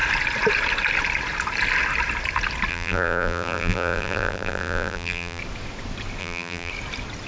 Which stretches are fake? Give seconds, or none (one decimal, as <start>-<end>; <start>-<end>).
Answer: 2.7-5.4; 6.2-6.7